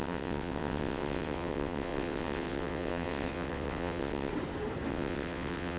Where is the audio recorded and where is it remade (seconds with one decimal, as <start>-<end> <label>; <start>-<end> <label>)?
0.0-4.3 remade; 4.3-4.9 recorded; 4.9-5.8 remade

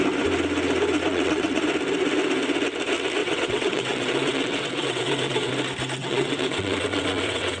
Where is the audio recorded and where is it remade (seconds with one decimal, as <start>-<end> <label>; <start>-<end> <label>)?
0.0-1.1 recorded; 1.1-1.6 remade; 1.6-3.2 recorded; 3.2-5.5 remade; 5.5-6.0 recorded; 6.0-7.6 remade

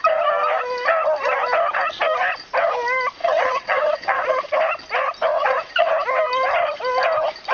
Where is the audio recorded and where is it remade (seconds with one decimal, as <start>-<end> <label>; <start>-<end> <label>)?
0.0-3.2 recorded; 3.2-4.5 remade; 4.5-5.3 recorded; 5.3-5.9 remade; 5.9-7.5 recorded

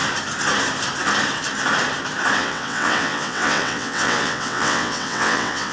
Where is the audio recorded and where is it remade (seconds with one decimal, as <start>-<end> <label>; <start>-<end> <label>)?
0.0-2.4 recorded; 2.4-5.7 remade

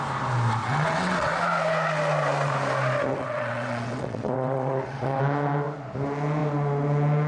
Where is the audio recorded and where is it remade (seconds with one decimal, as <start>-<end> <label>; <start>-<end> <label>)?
0.0-0.6 recorded; 0.6-1.3 remade; 1.3-3.1 recorded; 3.1-5.2 remade; 5.2-7.3 recorded

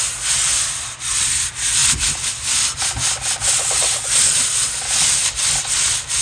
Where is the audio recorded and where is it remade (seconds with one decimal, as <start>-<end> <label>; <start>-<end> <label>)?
0.0-6.2 recorded

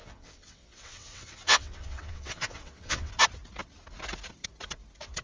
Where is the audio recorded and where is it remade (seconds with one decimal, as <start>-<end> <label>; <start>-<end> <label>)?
0.0-3.1 remade; 3.1-5.2 recorded